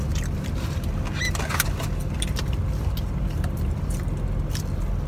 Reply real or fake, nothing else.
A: real